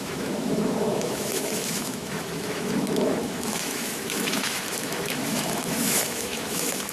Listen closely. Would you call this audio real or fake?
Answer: fake